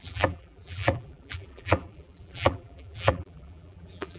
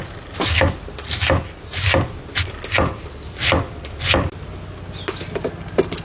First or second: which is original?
second